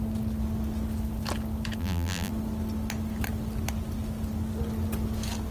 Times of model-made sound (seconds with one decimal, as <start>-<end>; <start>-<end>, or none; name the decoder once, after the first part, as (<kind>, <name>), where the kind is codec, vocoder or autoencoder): 1.8-2.3 (vocoder, BigVGAN v2)